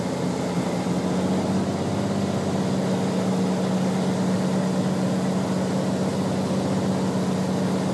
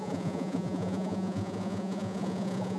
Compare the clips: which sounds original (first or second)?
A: first